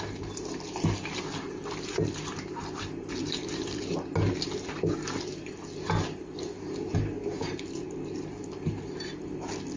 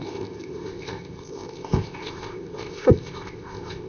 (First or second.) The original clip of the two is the first